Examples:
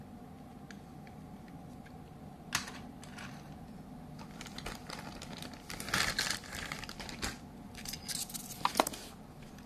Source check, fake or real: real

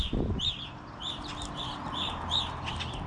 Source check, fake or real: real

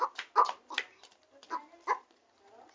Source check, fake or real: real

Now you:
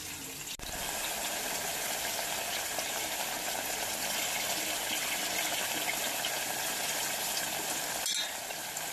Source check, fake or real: real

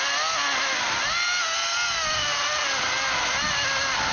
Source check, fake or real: real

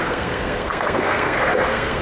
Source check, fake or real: fake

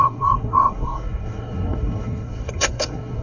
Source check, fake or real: fake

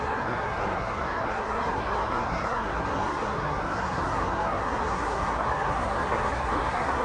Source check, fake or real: fake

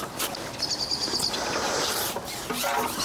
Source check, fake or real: real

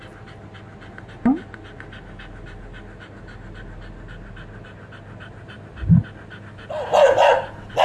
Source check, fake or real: real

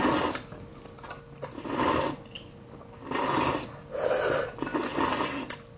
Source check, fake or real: real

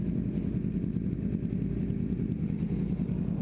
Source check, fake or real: real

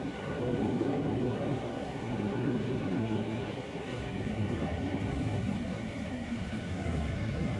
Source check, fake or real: fake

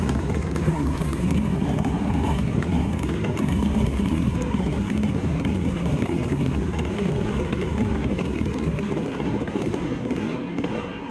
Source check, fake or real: fake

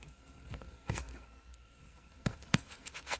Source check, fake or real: fake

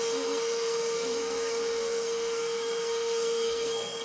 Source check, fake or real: fake